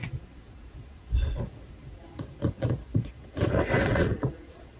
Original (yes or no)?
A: no